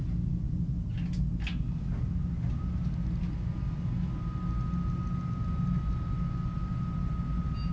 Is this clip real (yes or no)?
yes